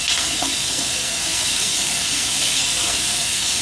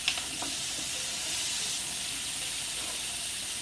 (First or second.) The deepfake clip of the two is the first